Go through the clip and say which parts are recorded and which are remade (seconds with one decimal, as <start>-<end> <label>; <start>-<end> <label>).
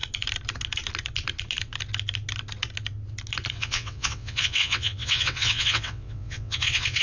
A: 0.0-3.5 recorded; 3.5-7.0 remade